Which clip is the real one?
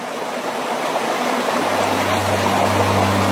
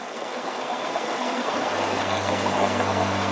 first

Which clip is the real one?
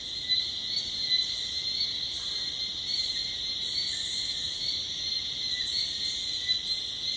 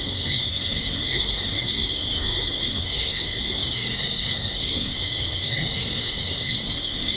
first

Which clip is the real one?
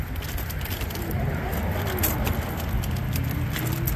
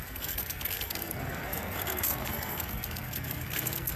first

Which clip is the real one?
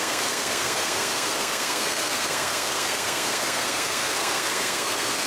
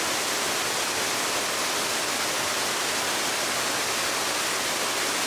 second